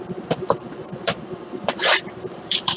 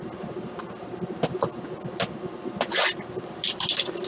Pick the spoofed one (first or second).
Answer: first